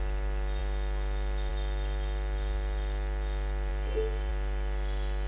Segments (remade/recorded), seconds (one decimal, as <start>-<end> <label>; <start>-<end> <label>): 0.0-5.3 recorded